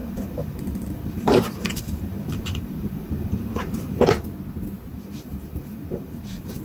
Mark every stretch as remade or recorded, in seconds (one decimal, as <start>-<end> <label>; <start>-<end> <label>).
0.0-4.0 remade; 4.0-4.9 recorded; 4.9-6.6 remade